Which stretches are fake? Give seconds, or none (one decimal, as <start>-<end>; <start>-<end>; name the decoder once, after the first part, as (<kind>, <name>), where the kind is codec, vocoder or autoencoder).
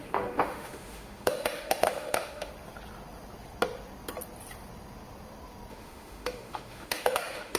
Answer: 0.0-2.5 (autoencoder, DAC-VAE); 5.7-7.6